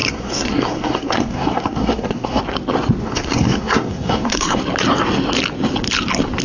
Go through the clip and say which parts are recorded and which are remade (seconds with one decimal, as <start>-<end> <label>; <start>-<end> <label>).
0.0-2.4 remade; 2.4-3.0 recorded; 3.0-4.6 remade; 4.6-6.4 recorded

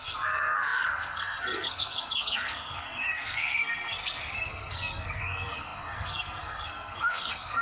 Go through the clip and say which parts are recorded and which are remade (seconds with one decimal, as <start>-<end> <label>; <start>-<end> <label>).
0.0-7.6 remade

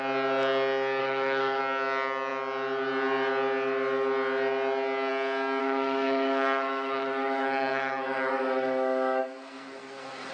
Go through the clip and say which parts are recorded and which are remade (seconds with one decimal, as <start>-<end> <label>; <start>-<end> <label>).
0.0-1.0 recorded; 1.0-1.6 remade; 1.6-5.6 recorded; 5.6-10.3 remade

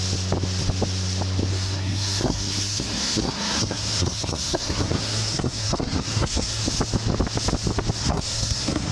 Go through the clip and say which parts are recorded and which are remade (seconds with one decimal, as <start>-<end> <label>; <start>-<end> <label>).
0.0-1.5 recorded; 1.5-6.6 remade; 6.6-8.0 recorded; 8.0-8.9 remade

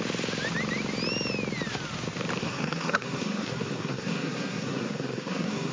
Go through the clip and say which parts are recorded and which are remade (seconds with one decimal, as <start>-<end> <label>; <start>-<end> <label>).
0.0-2.4 recorded; 2.4-5.7 remade

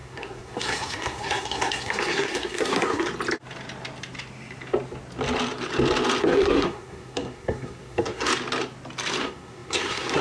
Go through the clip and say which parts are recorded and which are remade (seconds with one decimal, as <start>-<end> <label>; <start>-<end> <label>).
0.0-3.1 remade; 3.1-6.2 recorded; 6.2-8.3 remade; 8.3-9.2 recorded; 9.2-10.2 remade